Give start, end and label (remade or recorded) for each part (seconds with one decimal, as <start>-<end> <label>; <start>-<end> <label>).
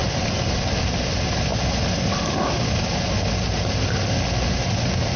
0.0-5.2 recorded